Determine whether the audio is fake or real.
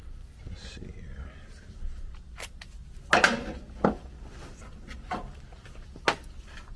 real